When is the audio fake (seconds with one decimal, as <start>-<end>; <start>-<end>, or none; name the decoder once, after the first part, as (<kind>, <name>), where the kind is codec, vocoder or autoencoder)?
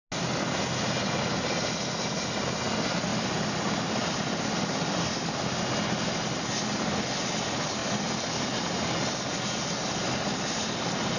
none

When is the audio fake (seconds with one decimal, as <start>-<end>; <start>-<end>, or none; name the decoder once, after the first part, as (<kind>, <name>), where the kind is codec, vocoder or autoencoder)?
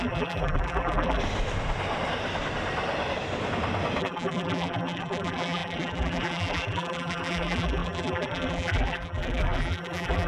0.0-1.2 (vocoder, BigVGAN v2); 4.0-10.3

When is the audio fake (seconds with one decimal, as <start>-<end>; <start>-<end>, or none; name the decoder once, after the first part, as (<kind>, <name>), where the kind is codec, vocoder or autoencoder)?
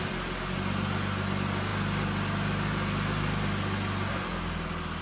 none